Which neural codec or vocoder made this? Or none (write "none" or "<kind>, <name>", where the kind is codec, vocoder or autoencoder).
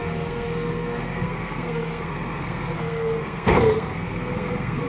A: codec, SNAC